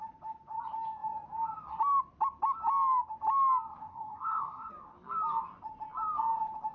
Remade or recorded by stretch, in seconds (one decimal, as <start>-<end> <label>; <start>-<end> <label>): 0.0-3.9 recorded; 3.9-4.7 remade; 4.7-6.7 recorded